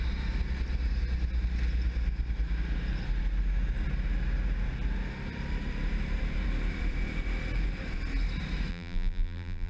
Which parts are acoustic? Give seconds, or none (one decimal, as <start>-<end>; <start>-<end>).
0.0-8.7